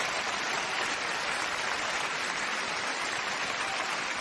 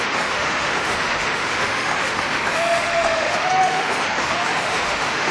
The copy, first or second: second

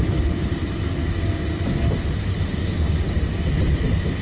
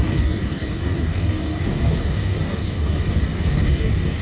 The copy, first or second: second